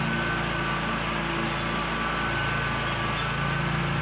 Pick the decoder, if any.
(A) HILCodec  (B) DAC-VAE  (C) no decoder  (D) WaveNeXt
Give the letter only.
C